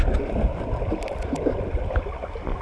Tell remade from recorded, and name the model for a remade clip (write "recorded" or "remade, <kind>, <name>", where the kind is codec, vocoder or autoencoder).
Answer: recorded